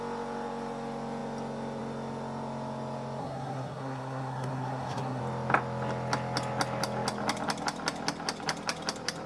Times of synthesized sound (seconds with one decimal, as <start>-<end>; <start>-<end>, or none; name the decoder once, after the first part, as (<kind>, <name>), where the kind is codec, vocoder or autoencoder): 3.2-5.2 (codec, SNAC)